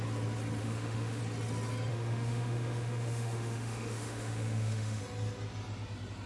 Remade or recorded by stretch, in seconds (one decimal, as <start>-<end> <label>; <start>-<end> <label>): 0.0-0.6 recorded; 0.6-1.2 remade; 1.2-1.9 recorded; 1.9-5.0 remade; 5.0-6.3 recorded